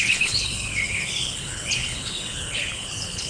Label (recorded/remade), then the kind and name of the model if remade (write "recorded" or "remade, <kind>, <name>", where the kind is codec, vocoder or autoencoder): remade, codec, HILCodec